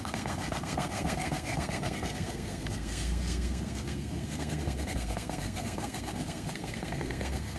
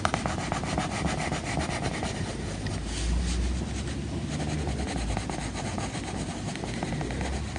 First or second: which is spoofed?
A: first